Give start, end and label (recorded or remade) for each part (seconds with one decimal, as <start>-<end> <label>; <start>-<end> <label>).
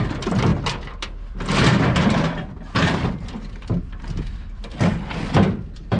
0.0-6.0 remade